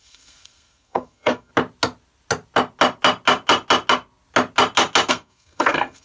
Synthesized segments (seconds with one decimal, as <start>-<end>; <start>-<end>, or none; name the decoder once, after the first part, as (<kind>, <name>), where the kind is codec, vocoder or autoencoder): 0.0-1.5 (codec, SNAC); 5.1-6.0